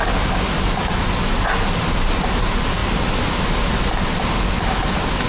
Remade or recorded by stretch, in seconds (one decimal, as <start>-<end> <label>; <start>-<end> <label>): 0.0-5.3 recorded